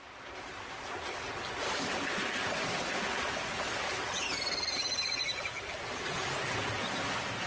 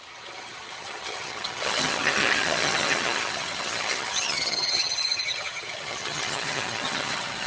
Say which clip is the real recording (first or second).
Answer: first